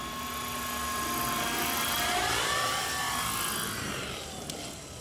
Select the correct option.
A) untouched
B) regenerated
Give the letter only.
A